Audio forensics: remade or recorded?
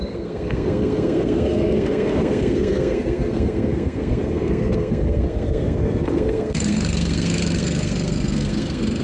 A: remade